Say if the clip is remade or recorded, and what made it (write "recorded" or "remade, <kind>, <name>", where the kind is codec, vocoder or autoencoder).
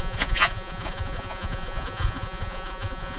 remade, vocoder, Vocos